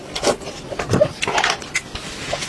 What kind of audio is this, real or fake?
real